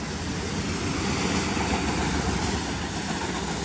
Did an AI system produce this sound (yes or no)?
no